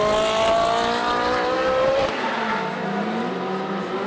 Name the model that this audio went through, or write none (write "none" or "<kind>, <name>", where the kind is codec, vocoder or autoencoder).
none